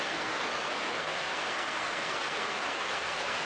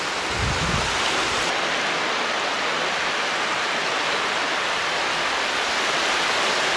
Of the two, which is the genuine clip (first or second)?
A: second